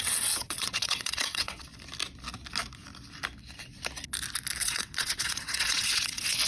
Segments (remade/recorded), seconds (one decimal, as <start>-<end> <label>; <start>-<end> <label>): 0.0-1.7 remade; 1.7-4.6 recorded; 4.6-6.5 remade